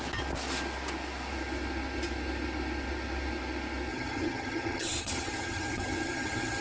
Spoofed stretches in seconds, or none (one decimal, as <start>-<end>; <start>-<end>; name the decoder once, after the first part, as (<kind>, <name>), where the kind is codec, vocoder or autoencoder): 3.9-6.6 (vocoder, HiFi-GAN)